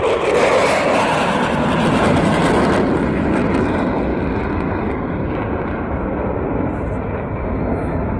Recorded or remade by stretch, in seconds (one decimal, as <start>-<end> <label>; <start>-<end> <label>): 0.0-4.1 recorded; 4.1-6.6 remade; 6.6-8.2 recorded